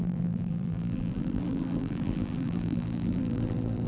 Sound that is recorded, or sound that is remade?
remade